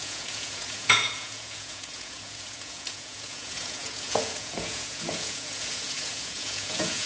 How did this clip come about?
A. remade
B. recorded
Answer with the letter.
A